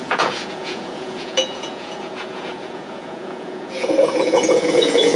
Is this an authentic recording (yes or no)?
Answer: no